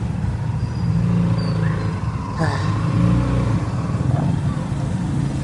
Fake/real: real